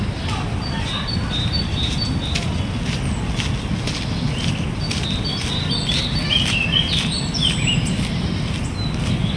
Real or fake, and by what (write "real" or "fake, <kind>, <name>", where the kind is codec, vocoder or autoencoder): real